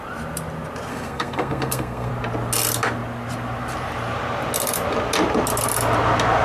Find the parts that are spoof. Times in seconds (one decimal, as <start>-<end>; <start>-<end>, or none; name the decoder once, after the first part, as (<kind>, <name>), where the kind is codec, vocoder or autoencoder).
0.9-2.1 (codec, SNAC)